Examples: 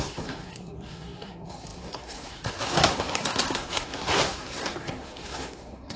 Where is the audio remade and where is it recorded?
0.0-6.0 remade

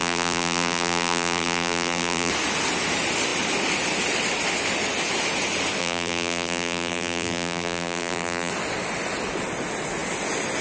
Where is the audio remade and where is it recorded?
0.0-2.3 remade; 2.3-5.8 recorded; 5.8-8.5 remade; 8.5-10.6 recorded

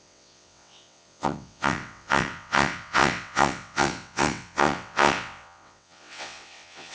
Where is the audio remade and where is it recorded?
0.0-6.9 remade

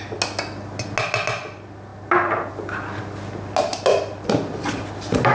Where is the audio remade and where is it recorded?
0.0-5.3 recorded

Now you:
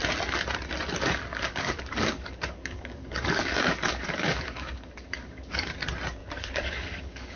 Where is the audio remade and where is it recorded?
0.0-1.3 recorded; 1.3-5.7 remade; 5.7-6.2 recorded; 6.2-7.4 remade